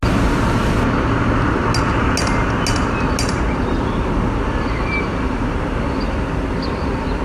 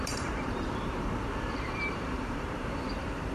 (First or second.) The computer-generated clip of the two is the second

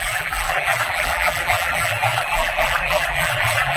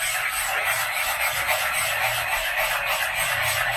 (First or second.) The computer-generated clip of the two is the first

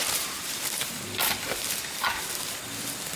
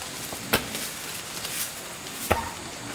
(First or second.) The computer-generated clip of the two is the first